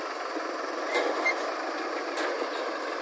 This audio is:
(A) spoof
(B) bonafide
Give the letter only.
B